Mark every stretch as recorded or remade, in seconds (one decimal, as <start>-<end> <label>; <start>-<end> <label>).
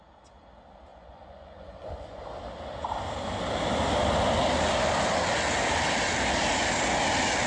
0.0-0.9 recorded; 0.9-2.2 remade; 2.2-7.5 recorded